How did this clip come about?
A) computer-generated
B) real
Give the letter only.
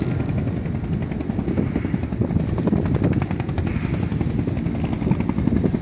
B